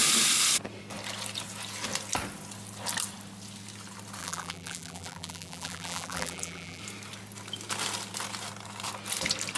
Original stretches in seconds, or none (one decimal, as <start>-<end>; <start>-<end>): 0.0-4.2; 6.8-9.6